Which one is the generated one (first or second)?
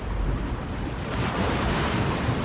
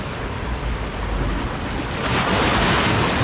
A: first